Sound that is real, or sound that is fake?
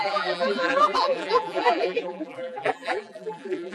fake